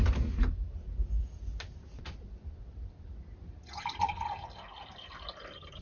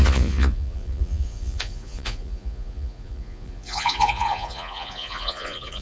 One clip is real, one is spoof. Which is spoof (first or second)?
second